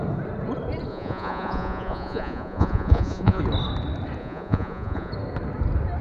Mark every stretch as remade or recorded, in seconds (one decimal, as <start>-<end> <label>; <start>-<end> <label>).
0.0-0.9 recorded; 0.9-3.4 remade; 3.4-4.2 recorded; 4.2-5.1 remade; 5.1-6.0 recorded